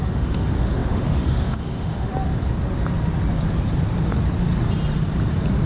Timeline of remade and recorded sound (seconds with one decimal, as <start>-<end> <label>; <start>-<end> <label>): 0.0-2.1 remade; 2.1-5.7 recorded